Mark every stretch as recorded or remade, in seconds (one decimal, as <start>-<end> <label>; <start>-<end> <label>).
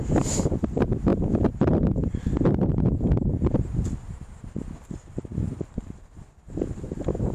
0.0-5.3 remade; 5.3-5.8 recorded; 5.8-7.3 remade